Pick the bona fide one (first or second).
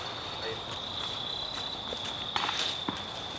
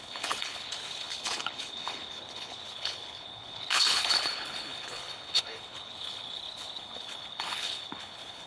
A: first